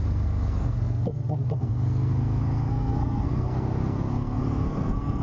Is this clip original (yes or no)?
no